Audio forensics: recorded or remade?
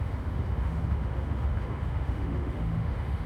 remade